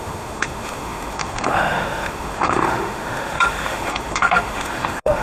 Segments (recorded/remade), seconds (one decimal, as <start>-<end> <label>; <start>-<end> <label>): 0.0-5.2 remade